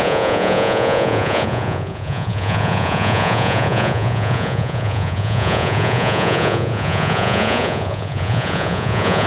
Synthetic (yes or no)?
yes